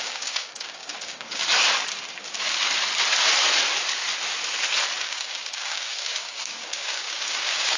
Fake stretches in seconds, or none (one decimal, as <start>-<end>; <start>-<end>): 0.0-1.4; 5.0-7.8